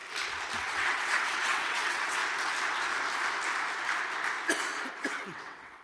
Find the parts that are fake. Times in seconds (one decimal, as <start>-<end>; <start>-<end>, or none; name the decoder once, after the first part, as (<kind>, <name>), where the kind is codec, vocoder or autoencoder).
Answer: 0.6-2.2 (vocoder, WaveNeXt); 4.9-5.8